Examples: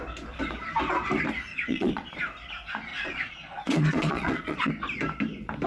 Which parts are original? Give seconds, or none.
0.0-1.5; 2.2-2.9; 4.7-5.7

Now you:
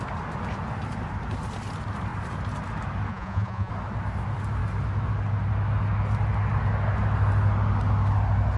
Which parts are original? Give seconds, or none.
0.0-3.1; 3.7-8.6